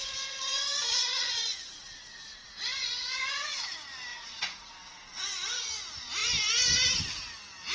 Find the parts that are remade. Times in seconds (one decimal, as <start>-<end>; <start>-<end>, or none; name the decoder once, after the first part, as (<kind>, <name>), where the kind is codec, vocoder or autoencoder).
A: 0.0-3.6 (vocoder, Vocos); 4.1-5.7